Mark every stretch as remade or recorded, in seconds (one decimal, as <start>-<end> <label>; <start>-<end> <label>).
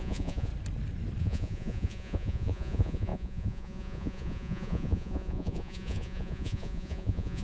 0.0-0.5 remade; 0.5-1.2 recorded; 1.2-7.4 remade